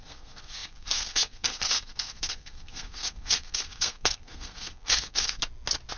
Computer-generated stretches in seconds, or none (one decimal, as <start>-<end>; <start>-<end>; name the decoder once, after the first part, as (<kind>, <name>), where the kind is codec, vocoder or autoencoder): 0.0-5.4 (codec, SNAC)

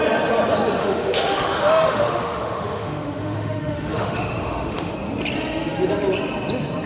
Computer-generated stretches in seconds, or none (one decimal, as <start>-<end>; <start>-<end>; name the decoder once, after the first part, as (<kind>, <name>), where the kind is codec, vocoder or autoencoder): 0.8-4.9 (autoencoder, DAC-VAE)